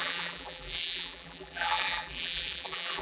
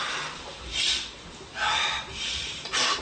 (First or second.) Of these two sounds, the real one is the second